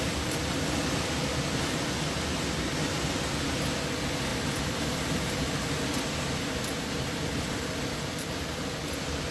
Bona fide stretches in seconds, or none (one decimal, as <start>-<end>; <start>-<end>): 0.0-4.3; 5.3-9.3